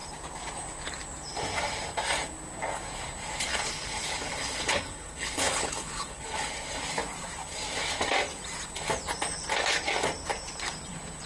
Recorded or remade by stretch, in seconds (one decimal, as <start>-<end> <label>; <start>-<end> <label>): 0.0-3.5 recorded; 3.5-6.5 remade; 6.5-11.3 recorded